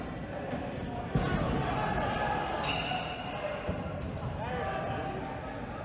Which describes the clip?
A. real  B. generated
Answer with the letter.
A